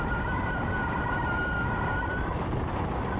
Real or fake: real